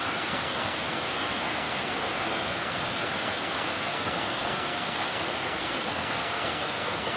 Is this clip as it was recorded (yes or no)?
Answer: no